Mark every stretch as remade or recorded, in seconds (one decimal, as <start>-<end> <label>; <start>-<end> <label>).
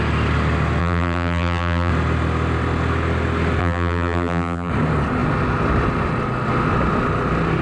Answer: 0.0-0.8 recorded; 0.8-1.9 remade; 1.9-3.6 recorded; 3.6-4.7 remade; 4.7-7.6 recorded